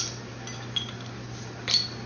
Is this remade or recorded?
recorded